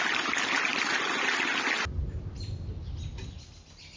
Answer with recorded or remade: recorded